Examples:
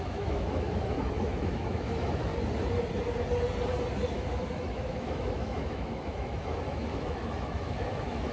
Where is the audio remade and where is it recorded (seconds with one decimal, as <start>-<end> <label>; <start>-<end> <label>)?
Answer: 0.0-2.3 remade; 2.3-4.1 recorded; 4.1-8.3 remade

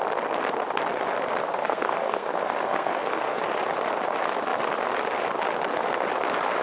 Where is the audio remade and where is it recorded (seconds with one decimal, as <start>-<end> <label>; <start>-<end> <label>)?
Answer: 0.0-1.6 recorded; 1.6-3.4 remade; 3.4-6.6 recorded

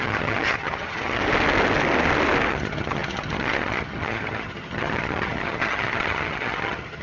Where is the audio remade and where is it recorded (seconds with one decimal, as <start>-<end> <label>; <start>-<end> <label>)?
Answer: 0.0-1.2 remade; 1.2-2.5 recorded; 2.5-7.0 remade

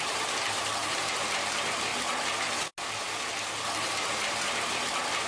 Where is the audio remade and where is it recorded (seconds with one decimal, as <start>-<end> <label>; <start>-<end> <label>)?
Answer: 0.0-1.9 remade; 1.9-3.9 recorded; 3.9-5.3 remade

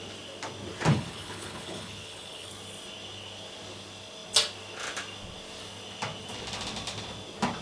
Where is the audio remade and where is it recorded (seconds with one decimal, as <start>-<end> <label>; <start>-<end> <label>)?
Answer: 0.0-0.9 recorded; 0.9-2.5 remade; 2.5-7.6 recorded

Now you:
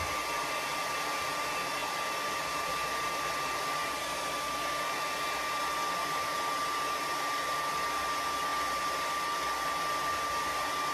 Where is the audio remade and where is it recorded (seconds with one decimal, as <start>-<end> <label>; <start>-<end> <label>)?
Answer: 0.0-10.9 recorded

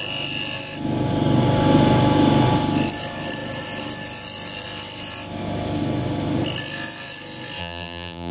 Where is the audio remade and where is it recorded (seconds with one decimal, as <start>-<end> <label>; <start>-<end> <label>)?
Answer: 0.0-7.6 recorded; 7.6-8.3 remade

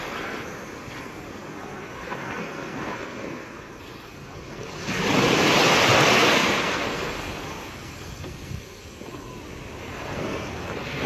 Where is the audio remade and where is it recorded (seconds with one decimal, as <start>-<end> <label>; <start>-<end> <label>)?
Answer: 0.0-5.0 remade; 5.0-6.1 recorded; 6.1-9.3 remade; 9.3-9.8 recorded; 9.8-11.1 remade